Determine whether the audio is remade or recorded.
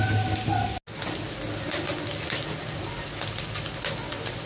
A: recorded